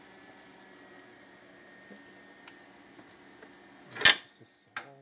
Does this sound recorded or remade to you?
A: recorded